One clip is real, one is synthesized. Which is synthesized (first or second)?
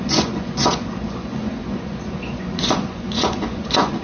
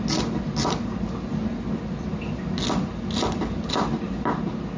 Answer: first